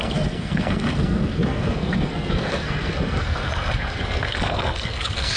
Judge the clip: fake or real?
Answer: fake